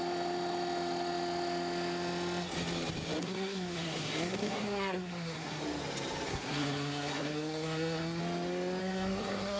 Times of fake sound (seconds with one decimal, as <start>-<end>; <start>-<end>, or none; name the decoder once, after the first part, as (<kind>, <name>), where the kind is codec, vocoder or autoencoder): 3.2-5.6 (codec, SNAC); 6.3-8.2; 8.8-9.6